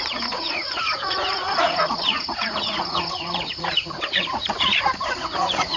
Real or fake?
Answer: fake